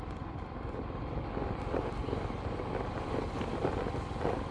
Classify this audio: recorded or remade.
recorded